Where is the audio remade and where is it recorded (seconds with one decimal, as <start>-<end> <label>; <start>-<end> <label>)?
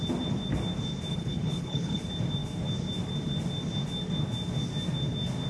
0.0-1.1 recorded; 1.1-2.0 remade; 2.0-5.5 recorded